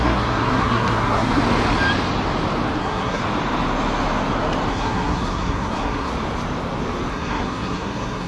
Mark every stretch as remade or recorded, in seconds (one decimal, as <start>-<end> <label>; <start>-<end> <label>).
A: 0.0-1.4 remade; 1.4-2.8 recorded; 2.8-3.2 remade; 3.2-4.7 recorded; 4.7-6.1 remade; 6.1-7.1 recorded; 7.1-8.3 remade